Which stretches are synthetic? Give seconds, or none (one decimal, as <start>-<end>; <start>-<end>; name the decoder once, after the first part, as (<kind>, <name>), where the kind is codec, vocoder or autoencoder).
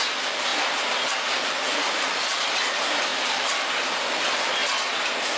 none